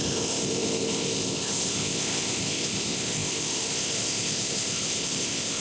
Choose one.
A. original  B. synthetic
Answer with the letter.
B